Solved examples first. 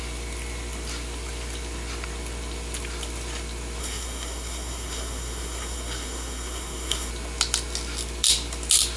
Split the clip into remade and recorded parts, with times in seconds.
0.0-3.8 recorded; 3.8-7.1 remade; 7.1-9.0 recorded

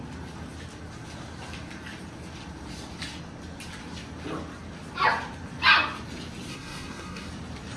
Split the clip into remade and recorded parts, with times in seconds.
0.0-6.5 recorded; 6.5-7.3 remade; 7.3-7.8 recorded

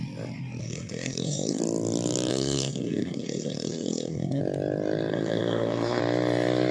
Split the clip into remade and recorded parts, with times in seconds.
0.0-0.6 recorded; 0.6-1.6 remade; 1.6-2.3 recorded; 2.3-4.4 remade; 4.4-5.1 recorded; 5.1-6.0 remade; 6.0-6.7 recorded

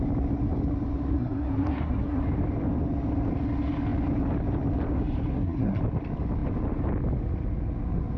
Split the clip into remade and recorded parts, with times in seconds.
0.0-1.1 recorded; 1.1-2.2 remade; 2.2-5.3 recorded; 5.3-5.8 remade; 5.8-8.2 recorded

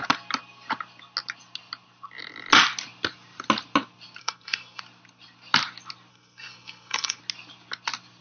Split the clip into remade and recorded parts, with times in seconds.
0.0-4.2 recorded; 4.2-4.8 remade; 4.8-6.1 recorded; 6.1-7.2 remade; 7.2-8.2 recorded

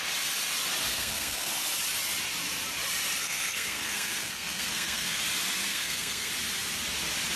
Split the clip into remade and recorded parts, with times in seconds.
0.0-0.9 recorded; 0.9-1.5 remade; 1.5-3.2 recorded; 3.2-5.2 remade; 5.2-5.7 recorded; 5.7-6.3 remade; 6.3-7.4 recorded

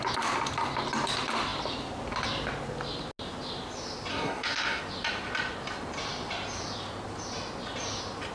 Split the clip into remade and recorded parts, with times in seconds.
0.0-4.1 recorded; 4.1-4.8 remade; 4.8-8.3 recorded

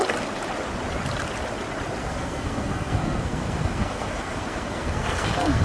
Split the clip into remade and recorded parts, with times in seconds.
0.0-2.0 recorded; 2.0-5.6 remade